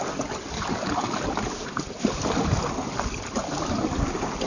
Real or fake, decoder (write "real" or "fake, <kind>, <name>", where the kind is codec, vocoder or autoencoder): real